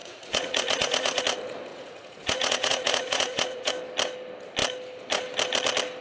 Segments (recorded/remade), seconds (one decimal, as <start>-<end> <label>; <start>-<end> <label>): 0.0-1.2 remade; 1.2-1.7 recorded; 1.7-3.7 remade; 3.7-6.0 recorded